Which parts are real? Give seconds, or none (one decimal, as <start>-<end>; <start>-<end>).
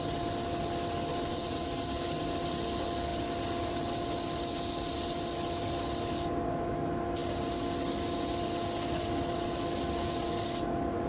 0.0-1.1; 2.0-11.1